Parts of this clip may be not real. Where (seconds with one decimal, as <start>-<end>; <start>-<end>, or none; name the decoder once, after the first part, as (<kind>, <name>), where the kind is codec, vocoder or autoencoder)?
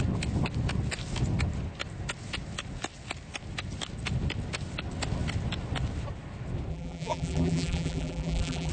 6.7-8.7 (vocoder, BigVGAN v2)